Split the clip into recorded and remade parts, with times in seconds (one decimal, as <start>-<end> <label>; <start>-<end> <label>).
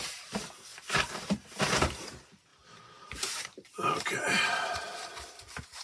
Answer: 0.0-5.8 remade